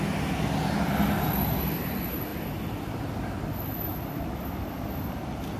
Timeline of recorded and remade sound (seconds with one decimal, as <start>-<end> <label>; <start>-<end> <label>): 0.0-5.6 recorded